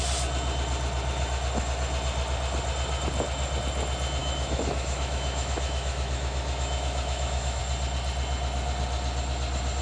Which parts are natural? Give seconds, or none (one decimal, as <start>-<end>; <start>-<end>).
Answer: 0.0-4.2; 7.6-9.8

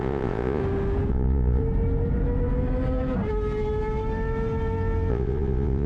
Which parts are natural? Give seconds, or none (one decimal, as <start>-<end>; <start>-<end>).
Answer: 0.6-1.1; 1.6-5.1

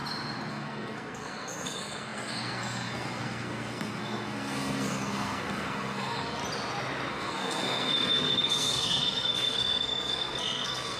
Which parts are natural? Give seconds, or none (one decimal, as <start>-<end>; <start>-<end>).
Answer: 0.0-0.5; 6.4-7.1

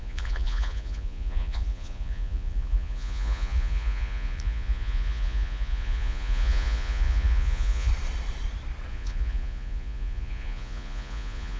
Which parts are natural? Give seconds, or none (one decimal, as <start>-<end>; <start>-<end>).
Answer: 7.9-8.9

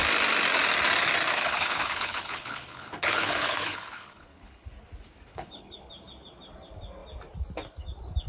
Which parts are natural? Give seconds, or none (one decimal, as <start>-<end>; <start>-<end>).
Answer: 0.0-1.3; 4.7-5.3; 5.9-8.3

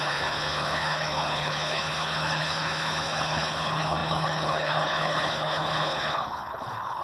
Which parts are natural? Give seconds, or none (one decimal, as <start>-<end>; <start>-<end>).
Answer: none